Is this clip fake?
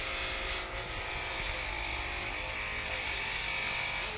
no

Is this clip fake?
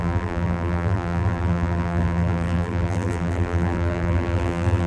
yes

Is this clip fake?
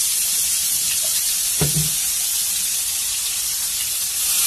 no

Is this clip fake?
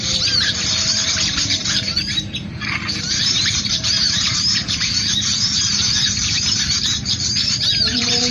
yes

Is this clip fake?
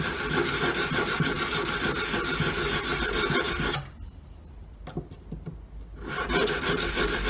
no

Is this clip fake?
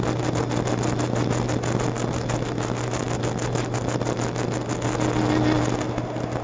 no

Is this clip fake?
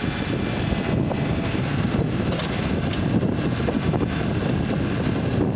no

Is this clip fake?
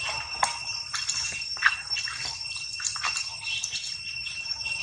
no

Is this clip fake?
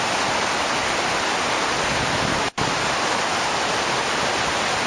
no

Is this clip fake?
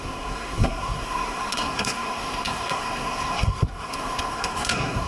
yes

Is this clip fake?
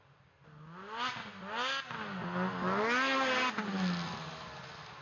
no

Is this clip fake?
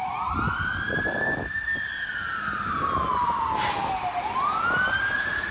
yes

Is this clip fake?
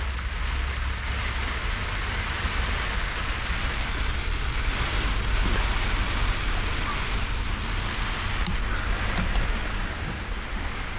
no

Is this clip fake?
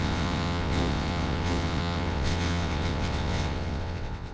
yes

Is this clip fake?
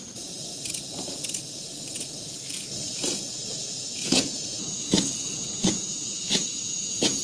yes